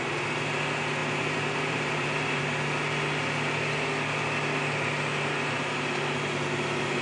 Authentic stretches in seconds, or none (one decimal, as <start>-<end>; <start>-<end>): 0.0-1.0; 2.4-7.0